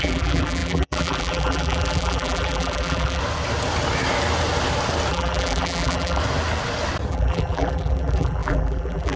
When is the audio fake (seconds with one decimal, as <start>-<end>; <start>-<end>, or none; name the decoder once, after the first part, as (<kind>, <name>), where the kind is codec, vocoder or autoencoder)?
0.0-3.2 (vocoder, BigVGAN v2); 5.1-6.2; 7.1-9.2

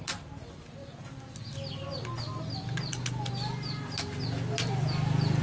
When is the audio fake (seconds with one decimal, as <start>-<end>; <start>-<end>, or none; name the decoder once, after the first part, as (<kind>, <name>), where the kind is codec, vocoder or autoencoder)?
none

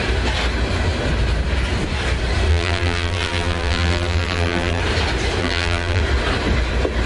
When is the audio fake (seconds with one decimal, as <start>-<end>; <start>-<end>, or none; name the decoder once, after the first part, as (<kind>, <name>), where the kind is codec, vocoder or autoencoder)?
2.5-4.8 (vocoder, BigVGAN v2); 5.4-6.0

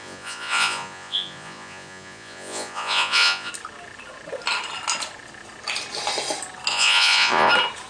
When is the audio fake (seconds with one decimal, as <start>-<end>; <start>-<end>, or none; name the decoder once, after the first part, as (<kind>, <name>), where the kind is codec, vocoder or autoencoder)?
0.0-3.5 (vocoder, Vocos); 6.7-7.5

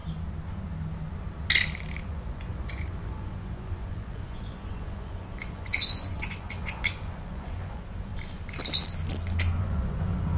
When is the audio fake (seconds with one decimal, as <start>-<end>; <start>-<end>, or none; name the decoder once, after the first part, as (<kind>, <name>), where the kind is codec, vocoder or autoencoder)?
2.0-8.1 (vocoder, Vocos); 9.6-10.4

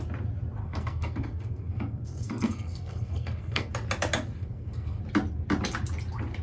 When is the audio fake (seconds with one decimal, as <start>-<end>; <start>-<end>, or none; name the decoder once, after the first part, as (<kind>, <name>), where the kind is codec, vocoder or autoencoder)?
0.6-3.7 (codec, SNAC); 4.4-5.0